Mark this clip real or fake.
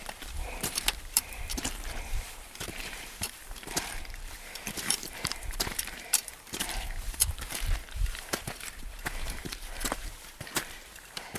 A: fake